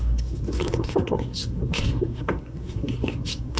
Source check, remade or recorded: remade